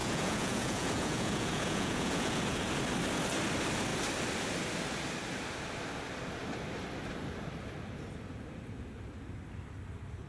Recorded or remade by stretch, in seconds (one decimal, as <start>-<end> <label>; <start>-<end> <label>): 0.0-2.7 remade; 2.7-10.3 recorded